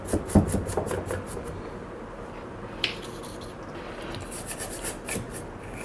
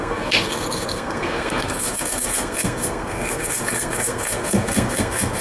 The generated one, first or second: second